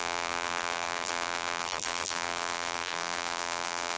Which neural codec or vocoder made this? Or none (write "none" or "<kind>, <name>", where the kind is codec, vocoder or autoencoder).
vocoder, BigVGAN v2